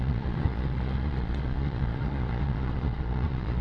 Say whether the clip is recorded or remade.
remade